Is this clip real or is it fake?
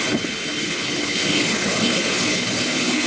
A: fake